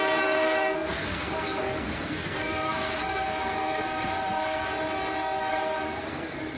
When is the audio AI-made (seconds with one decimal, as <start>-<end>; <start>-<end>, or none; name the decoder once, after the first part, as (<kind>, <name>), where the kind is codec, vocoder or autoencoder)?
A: 0.0-4.7 (codec, SNAC); 5.4-6.6